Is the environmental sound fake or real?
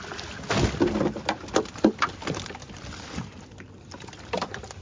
real